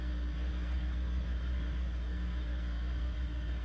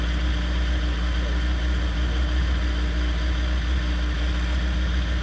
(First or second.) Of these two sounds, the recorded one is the second